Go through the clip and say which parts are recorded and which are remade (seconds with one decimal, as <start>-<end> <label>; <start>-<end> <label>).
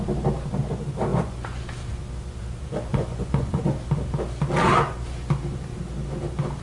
0.0-1.1 recorded; 1.1-1.6 remade; 1.6-2.9 recorded; 2.9-3.6 remade; 3.6-6.6 recorded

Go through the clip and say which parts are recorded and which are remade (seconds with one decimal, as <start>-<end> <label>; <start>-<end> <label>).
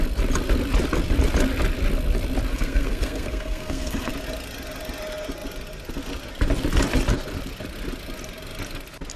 0.0-2.5 recorded; 2.5-4.1 remade; 4.1-9.2 recorded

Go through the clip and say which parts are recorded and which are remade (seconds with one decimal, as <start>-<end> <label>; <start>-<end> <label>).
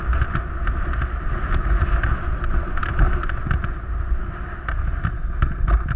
0.0-6.0 recorded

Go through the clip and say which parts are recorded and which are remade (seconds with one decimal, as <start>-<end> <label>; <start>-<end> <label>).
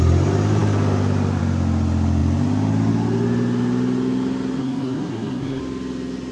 0.0-4.6 recorded; 4.6-5.6 remade; 5.6-6.3 recorded